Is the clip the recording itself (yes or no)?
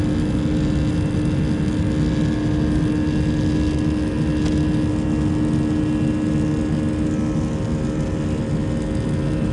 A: yes